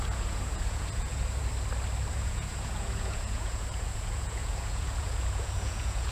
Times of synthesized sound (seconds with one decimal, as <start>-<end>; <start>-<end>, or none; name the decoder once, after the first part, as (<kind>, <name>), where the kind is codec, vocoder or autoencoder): 0.0-1.4 (vocoder, Vocos); 2.1-6.1